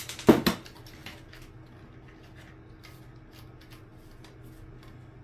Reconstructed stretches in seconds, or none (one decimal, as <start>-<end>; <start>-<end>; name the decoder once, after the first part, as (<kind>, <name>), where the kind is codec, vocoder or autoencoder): none